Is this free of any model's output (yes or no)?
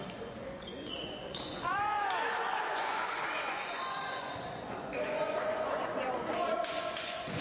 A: no